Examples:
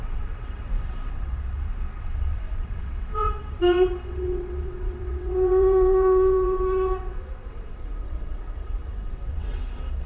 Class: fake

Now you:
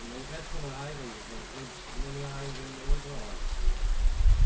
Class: real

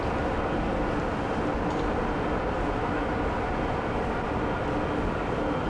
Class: real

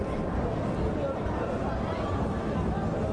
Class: real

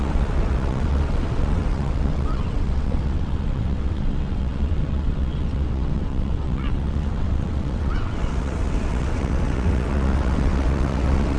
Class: fake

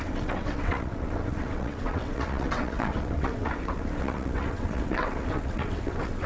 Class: fake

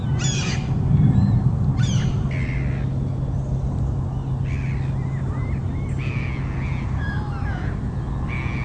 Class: real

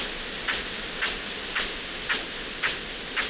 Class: real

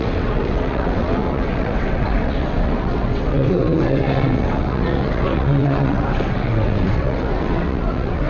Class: fake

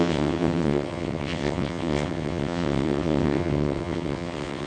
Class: fake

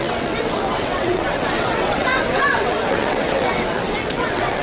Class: fake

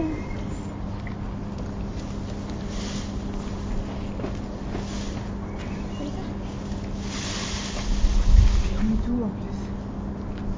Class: real